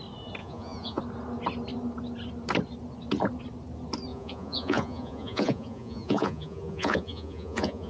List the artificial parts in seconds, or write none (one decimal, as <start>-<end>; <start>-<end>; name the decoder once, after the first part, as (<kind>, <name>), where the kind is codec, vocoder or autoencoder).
0.4-1.0 (vocoder, Vocos); 4.1-7.9